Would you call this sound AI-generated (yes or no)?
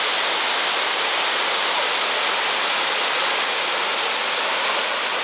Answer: no